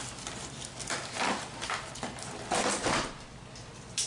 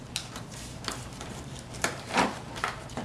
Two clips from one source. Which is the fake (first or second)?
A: second